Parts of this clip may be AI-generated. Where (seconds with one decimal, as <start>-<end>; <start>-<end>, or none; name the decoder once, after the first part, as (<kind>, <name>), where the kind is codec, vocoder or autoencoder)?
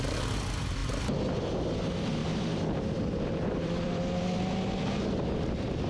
0.8-1.5 (vocoder, BigVGAN v2); 2.2-4.4